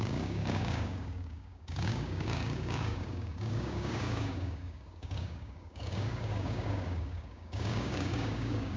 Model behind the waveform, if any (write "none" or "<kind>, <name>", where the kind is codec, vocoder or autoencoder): codec, DAC